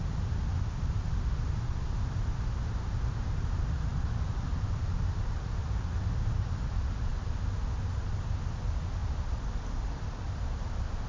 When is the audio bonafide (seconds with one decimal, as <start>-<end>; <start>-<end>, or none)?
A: 0.0-11.1